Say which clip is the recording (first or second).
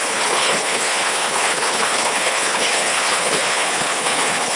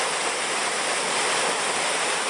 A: second